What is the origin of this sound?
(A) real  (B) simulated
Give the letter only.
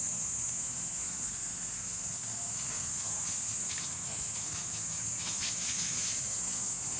B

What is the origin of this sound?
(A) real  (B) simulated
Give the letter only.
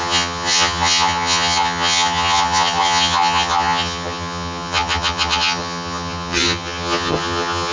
B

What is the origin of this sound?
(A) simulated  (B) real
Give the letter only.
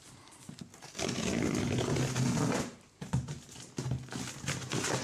B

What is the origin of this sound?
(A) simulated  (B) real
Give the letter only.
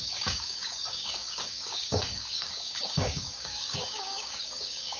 A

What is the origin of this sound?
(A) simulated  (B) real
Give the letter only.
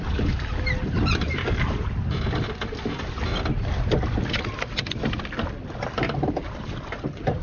B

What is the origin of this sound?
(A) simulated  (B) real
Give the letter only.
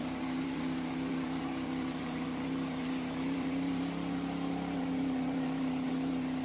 A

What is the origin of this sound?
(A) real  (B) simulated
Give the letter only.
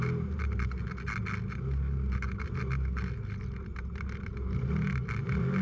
A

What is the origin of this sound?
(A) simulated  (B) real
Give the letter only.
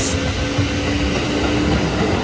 B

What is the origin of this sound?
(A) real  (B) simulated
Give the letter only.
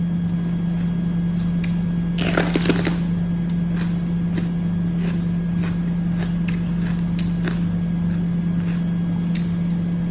A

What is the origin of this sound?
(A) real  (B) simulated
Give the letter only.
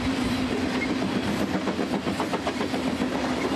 A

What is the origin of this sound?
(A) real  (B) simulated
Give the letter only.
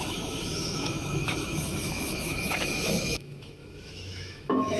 B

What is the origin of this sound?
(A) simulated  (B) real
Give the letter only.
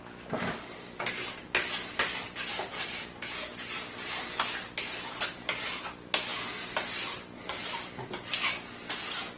B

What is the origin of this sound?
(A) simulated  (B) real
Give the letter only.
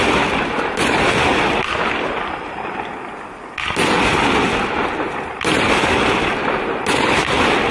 B